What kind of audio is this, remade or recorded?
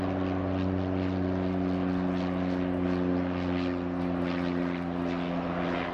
recorded